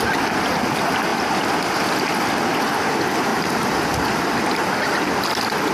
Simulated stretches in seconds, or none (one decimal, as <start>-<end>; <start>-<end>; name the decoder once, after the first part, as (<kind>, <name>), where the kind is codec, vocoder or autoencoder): 1.1-1.7 (vocoder, BigVGAN v2); 3.3-5.0